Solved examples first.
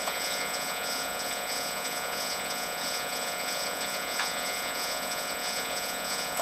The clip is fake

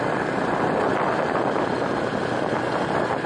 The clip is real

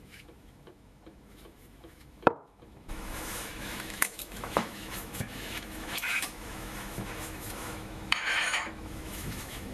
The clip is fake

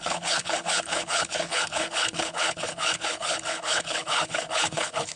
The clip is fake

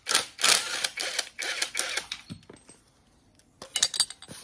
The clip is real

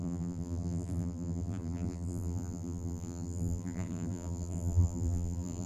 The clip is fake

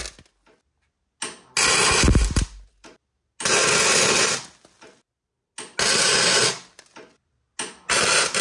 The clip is real